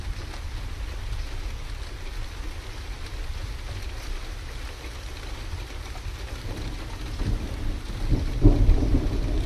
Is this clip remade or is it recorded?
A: recorded